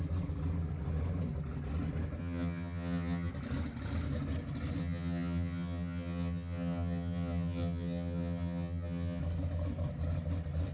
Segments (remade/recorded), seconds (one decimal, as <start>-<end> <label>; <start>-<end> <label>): 0.0-2.2 recorded; 2.2-3.3 remade; 3.3-4.8 recorded; 4.8-9.2 remade; 9.2-10.7 recorded